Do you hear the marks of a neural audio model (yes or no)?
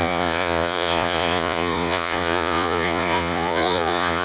yes